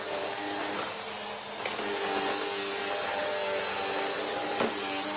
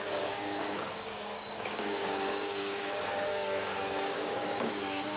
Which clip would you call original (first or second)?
first